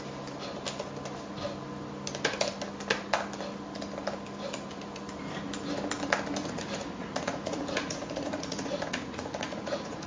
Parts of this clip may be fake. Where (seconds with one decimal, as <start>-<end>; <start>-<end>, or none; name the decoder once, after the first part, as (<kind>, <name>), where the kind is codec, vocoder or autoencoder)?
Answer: 6.4-10.1 (vocoder, Vocos)